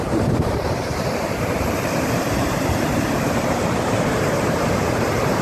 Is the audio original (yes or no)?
no